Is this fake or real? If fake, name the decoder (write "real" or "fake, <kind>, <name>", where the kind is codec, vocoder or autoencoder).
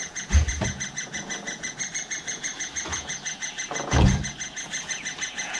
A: fake, vocoder, Vocos